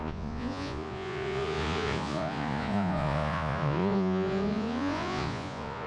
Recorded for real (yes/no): no